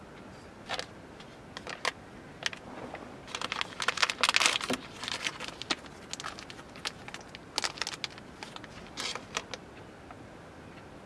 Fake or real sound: real